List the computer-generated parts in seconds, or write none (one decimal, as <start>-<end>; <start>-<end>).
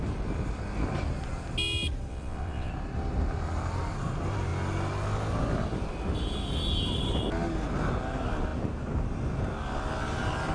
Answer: 2.1-2.7